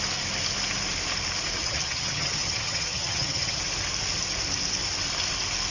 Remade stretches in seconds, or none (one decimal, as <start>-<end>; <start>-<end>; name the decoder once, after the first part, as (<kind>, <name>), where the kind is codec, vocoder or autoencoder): 1.6-3.6 (vocoder, HiFi-GAN)